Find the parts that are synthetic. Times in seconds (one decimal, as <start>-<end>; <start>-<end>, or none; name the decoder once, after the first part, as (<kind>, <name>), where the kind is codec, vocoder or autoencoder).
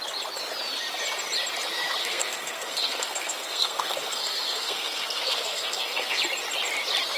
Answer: 2.0-6.2 (codec, SNAC)